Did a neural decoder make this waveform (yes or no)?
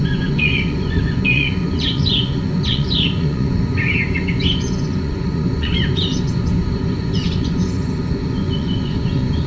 yes